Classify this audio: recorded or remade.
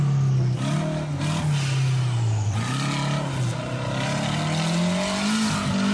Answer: recorded